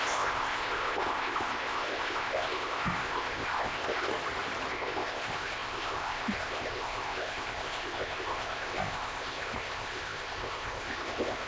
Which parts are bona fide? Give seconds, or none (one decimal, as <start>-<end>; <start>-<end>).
4.1-4.7